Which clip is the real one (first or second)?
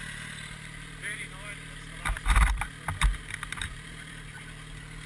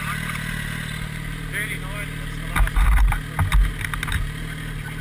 second